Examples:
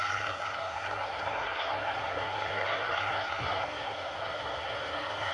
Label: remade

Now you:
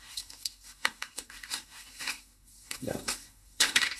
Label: remade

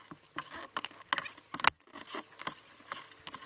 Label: recorded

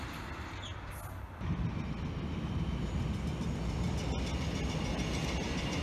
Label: recorded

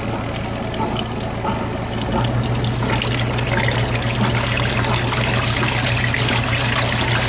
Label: recorded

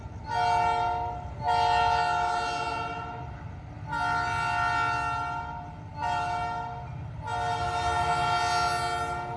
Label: recorded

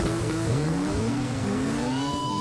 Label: remade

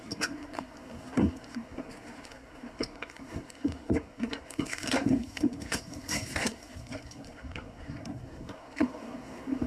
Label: remade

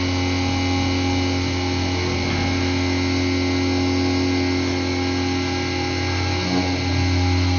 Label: recorded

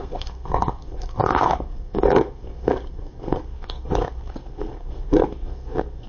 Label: remade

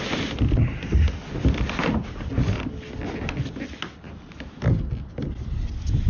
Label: recorded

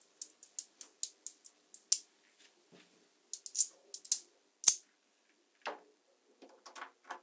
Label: recorded